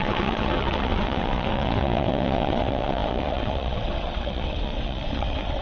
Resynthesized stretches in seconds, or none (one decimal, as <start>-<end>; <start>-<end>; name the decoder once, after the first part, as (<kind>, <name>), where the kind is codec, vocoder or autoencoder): 0.0-5.6 (vocoder, WaveNeXt)